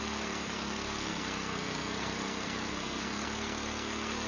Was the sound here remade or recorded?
remade